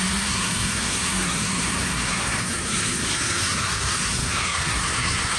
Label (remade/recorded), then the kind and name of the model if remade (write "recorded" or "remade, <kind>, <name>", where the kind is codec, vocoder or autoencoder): remade, codec, SNAC